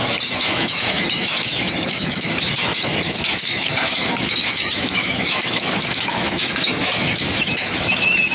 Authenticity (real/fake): fake